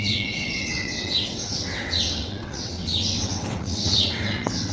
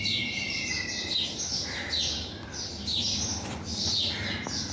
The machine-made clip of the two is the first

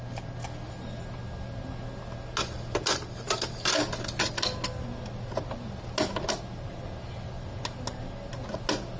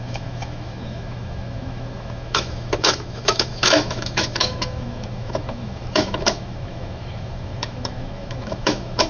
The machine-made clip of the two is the second